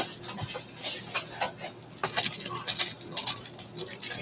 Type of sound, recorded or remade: recorded